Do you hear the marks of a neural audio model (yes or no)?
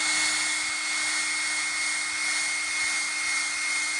no